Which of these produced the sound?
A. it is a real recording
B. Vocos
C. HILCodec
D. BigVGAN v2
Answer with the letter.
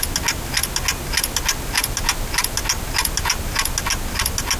A